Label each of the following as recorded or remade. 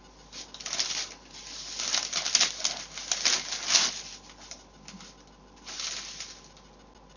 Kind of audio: recorded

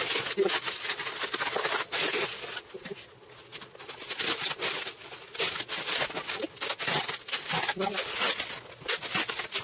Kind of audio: recorded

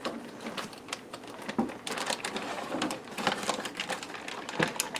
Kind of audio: recorded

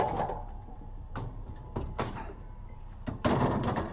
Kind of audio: remade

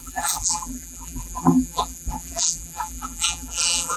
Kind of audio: remade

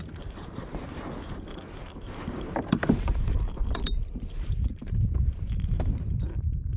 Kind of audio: remade